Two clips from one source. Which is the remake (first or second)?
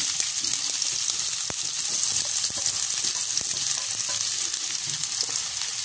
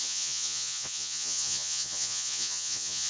second